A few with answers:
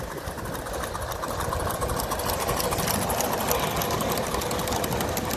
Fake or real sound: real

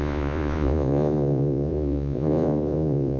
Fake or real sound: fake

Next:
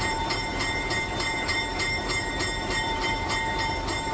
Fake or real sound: fake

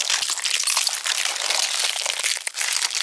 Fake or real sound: real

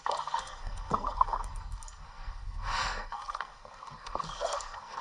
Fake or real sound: fake